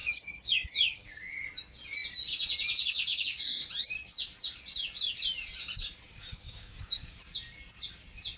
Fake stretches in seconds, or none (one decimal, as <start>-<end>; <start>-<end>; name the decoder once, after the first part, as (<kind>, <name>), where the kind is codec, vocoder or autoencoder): 0.0-1.1 (codec, DAC); 6.1-7.2